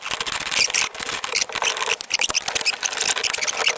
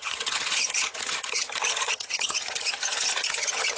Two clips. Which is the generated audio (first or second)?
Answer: second